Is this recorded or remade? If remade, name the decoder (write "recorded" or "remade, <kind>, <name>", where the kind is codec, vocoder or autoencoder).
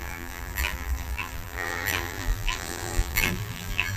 remade, vocoder, BigVGAN v2